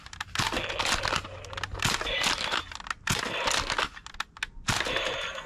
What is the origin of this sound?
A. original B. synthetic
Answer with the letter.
A